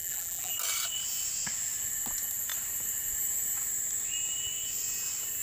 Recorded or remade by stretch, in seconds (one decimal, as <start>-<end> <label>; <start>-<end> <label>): 0.0-0.5 remade; 0.5-5.4 recorded